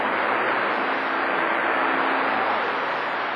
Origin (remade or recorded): recorded